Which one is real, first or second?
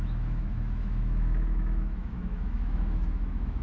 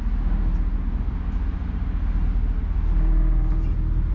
second